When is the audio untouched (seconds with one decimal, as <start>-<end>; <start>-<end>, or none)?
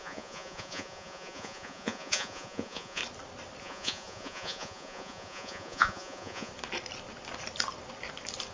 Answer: 3.0-3.6; 6.5-8.5